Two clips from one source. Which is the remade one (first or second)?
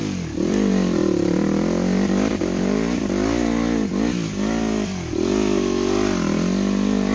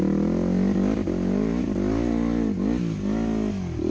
first